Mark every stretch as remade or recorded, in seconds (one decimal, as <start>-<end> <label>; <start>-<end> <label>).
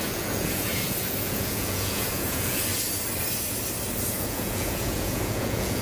0.0-2.7 remade; 2.7-4.1 recorded; 4.1-5.8 remade